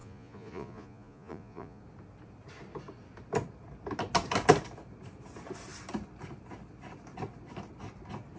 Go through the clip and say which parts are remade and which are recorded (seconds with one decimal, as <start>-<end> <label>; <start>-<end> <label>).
0.0-1.8 remade; 1.8-8.4 recorded

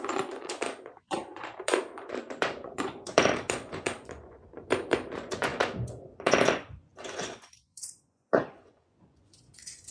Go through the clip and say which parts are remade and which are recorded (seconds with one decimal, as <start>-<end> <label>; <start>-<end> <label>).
0.0-9.9 remade

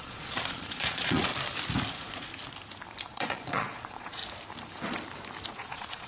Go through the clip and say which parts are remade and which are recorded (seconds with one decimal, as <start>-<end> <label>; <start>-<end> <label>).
0.0-1.3 remade; 1.3-1.9 recorded; 1.9-2.3 remade; 2.3-3.0 recorded; 3.0-4.2 remade; 4.2-5.5 recorded; 5.5-6.1 remade